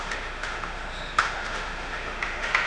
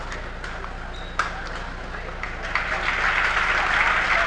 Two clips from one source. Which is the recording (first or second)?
second